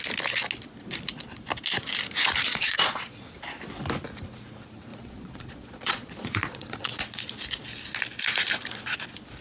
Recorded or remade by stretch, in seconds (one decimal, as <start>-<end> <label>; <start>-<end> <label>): 0.0-2.5 recorded; 2.5-3.2 remade; 3.2-4.9 recorded; 4.9-7.0 remade; 7.0-9.4 recorded

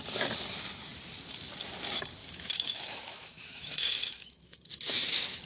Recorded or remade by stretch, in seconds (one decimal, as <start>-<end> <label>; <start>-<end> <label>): 0.0-2.2 recorded; 2.2-5.4 remade